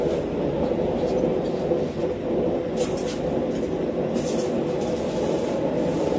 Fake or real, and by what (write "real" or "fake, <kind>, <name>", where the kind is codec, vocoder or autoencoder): fake, vocoder, BigVGAN v2